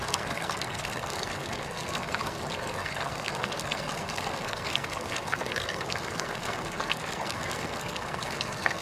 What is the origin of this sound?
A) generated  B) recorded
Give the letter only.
A